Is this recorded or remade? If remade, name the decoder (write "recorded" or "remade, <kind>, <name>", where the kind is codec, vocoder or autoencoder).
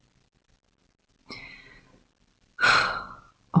recorded